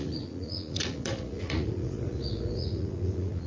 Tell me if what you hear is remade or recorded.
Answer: remade